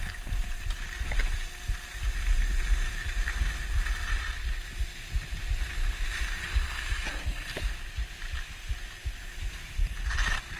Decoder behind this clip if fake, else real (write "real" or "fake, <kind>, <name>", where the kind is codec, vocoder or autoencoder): real